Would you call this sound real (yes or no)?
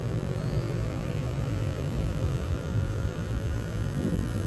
no